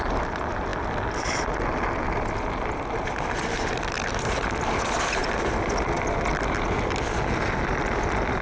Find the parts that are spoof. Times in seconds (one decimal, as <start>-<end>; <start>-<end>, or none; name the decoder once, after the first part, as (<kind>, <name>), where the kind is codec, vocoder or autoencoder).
none